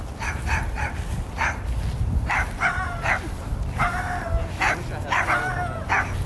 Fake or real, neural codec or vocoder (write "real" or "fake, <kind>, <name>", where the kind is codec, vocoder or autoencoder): real